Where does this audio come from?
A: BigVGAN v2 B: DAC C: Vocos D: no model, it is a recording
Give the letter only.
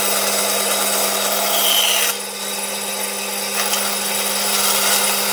D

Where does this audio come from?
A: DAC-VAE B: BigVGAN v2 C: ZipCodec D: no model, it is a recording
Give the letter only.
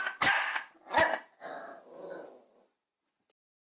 D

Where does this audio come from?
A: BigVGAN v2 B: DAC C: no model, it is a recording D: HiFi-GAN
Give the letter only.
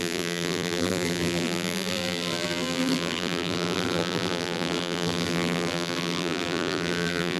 A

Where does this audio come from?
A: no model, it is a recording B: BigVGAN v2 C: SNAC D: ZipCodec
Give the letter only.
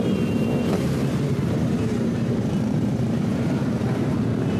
B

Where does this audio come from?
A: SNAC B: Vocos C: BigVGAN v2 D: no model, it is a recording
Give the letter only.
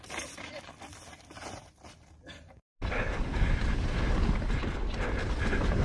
D